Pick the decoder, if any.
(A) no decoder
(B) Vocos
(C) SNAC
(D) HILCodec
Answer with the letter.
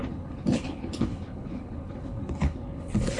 D